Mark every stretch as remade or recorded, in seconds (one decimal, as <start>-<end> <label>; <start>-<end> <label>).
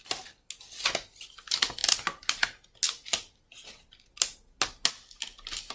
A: 0.0-5.7 recorded